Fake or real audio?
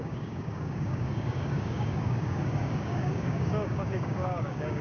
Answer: fake